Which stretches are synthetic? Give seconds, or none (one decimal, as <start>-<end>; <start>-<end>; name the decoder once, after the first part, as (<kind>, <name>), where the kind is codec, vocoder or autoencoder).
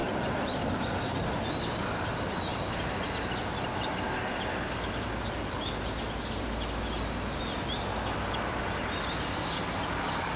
none